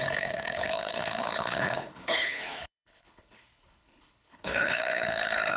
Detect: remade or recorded remade